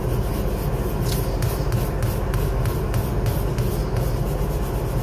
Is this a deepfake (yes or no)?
no